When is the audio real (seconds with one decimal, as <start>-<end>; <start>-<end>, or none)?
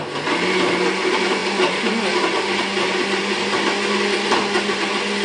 0.0-5.2